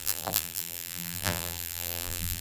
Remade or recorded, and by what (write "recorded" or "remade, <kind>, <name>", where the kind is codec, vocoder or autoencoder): remade, vocoder, BigVGAN v2